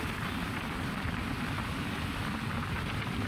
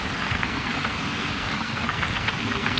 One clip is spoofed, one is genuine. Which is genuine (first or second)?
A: first